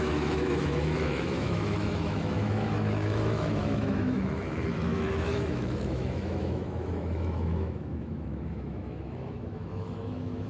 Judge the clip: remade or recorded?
remade